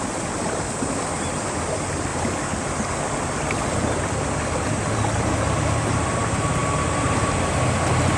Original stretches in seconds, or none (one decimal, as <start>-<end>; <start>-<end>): 0.0-2.1; 4.6-8.2